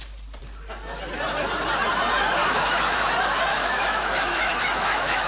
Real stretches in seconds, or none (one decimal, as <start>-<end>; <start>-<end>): 0.0-2.4; 3.1-3.5